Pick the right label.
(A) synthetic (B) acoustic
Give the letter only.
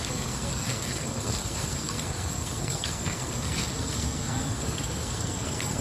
A